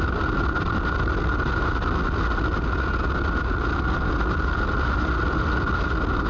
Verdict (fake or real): real